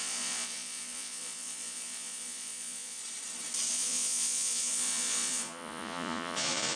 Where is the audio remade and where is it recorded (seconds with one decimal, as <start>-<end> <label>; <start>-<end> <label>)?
0.0-3.0 remade; 3.0-3.7 recorded; 3.7-6.8 remade